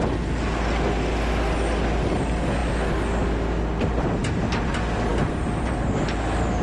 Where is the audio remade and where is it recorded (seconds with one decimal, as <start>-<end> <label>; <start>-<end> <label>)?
0.0-5.1 recorded; 5.1-5.8 remade; 5.8-6.6 recorded